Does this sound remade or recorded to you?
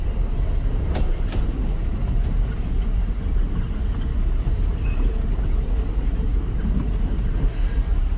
recorded